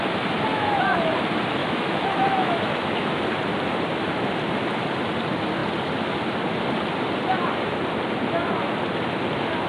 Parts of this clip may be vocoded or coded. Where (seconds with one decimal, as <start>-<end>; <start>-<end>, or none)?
0.5-1.1; 1.6-3.2